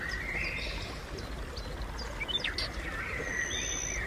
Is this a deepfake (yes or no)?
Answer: no